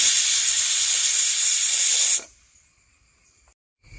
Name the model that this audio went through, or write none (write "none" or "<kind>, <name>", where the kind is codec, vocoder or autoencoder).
none